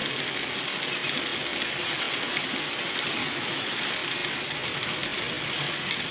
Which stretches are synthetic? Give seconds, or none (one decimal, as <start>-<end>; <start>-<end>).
3.2-3.7